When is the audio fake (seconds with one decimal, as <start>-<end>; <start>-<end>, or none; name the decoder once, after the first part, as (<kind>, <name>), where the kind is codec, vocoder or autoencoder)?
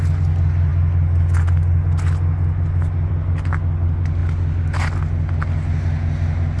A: none